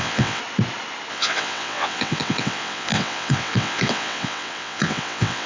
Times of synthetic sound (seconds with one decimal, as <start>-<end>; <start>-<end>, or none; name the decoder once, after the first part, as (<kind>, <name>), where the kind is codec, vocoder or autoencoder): 0.0-0.4 (vocoder, WaveNeXt); 1.1-5.5